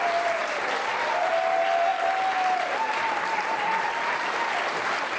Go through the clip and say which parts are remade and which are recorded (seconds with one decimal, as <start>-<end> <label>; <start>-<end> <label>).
0.0-5.2 recorded